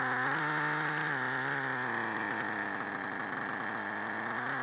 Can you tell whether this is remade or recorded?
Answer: recorded